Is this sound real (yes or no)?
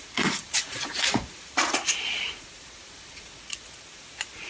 no